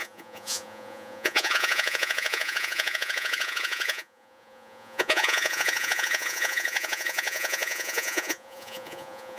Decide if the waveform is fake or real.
fake